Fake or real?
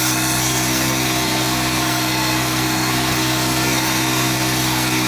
fake